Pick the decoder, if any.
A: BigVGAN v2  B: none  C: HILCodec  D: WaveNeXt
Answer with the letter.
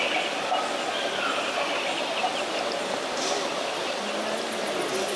B